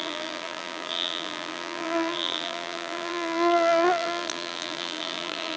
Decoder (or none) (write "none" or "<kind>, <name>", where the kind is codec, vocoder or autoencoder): vocoder, BigVGAN v2